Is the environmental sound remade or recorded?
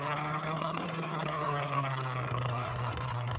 remade